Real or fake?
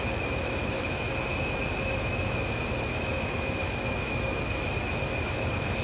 fake